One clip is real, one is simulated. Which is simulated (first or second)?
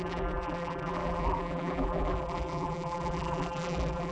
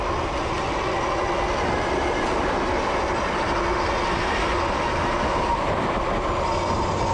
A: first